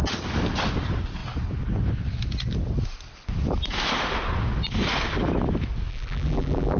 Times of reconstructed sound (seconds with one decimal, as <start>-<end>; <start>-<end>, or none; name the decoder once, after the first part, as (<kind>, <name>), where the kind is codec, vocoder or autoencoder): 5.9-6.8 (vocoder, BigVGAN v2)